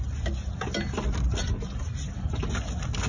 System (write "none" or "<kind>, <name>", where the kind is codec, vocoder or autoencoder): none